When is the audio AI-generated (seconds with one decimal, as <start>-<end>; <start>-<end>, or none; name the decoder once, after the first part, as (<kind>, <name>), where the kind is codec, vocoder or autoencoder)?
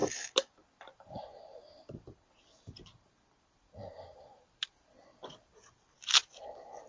none